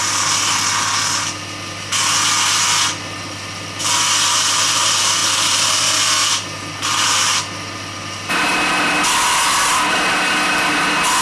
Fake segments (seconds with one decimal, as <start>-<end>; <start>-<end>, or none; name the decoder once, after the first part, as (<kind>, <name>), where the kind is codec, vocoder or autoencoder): none

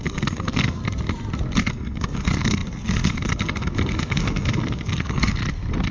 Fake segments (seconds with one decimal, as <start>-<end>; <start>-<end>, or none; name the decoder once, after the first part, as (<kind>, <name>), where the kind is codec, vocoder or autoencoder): 0.0-0.8 (codec, SNAC); 1.7-5.4